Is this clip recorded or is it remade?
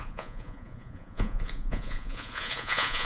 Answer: remade